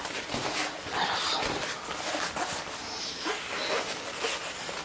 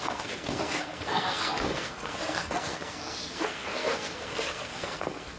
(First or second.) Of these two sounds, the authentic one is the first